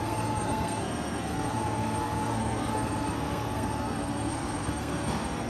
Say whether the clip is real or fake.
fake